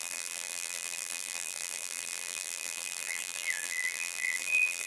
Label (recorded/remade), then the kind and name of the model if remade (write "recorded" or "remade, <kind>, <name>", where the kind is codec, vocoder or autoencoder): remade, vocoder, BigVGAN v2